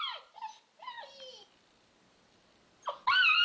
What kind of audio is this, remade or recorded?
recorded